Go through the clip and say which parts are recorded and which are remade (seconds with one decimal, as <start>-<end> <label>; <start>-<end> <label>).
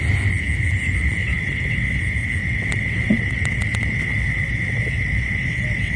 0.0-1.2 recorded; 1.2-2.0 remade; 2.0-2.4 recorded; 2.4-6.0 remade